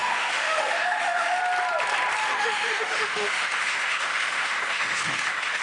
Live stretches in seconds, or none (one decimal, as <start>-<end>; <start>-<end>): 1.4-2.2